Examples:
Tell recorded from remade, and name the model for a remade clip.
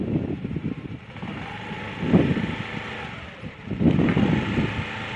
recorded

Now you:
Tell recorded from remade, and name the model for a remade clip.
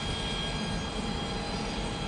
recorded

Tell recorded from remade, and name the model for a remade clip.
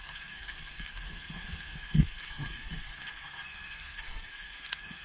remade, codec, SNAC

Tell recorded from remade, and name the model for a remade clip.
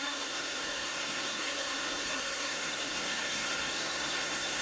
remade, codec, SNAC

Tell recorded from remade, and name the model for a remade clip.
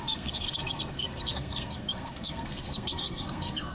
remade, codec, SNAC